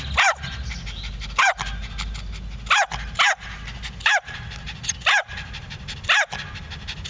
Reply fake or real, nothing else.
real